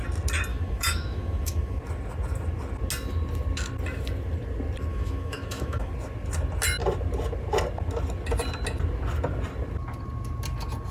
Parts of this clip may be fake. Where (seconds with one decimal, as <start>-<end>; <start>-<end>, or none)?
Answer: 0.5-1.8; 4.9-5.9